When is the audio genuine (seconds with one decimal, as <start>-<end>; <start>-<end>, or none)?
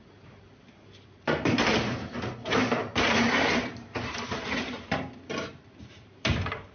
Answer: none